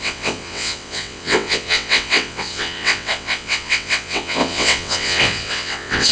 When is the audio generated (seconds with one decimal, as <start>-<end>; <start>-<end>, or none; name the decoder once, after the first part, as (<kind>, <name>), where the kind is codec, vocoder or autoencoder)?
0.0-6.1 (vocoder, WaveNeXt)